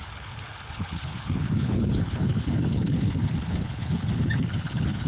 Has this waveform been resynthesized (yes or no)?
yes